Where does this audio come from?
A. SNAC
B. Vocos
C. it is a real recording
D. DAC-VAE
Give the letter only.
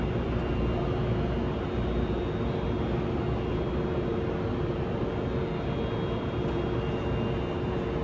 C